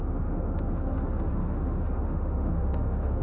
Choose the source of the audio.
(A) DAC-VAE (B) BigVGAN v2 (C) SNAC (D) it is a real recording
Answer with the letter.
A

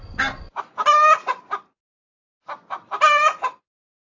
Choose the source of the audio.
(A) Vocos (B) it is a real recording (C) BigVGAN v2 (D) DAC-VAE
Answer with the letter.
B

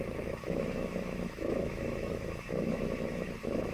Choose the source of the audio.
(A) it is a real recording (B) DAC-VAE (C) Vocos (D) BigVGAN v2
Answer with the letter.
B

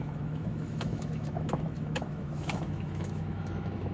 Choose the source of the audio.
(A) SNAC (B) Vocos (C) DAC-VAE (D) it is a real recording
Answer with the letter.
C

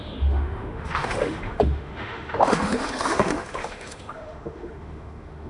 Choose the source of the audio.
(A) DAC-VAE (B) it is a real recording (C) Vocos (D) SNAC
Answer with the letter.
A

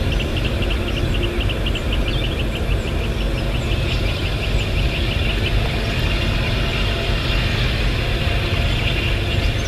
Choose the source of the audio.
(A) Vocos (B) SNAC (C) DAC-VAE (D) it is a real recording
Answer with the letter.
D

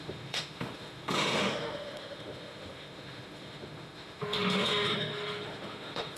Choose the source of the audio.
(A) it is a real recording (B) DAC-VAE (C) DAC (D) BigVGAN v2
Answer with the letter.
B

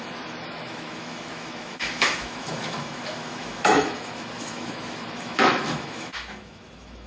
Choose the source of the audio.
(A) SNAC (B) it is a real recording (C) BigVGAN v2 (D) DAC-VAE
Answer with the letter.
D